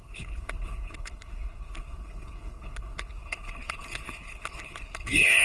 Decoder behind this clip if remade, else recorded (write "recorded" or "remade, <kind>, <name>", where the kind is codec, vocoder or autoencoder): remade, codec, HILCodec